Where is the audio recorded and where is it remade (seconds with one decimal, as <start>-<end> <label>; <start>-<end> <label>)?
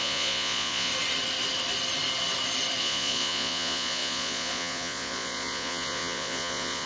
0.0-0.9 remade; 0.9-2.8 recorded; 2.8-6.9 remade